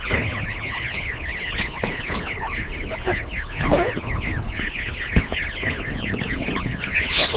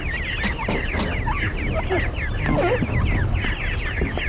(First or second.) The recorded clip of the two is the second